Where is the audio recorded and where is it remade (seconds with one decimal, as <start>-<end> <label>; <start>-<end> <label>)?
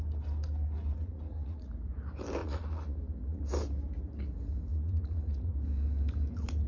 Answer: 0.0-1.0 recorded; 1.0-1.7 remade; 1.7-2.4 recorded; 2.4-3.4 remade; 3.4-4.7 recorded; 4.7-5.5 remade; 5.5-6.7 recorded